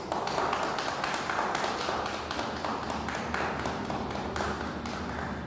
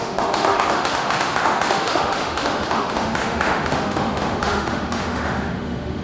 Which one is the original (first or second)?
first